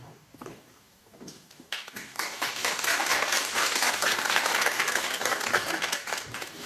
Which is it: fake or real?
fake